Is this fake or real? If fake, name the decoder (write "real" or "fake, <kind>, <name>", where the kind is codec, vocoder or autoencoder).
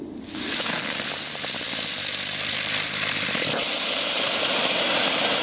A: real